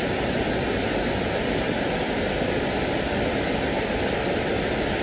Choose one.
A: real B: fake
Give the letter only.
A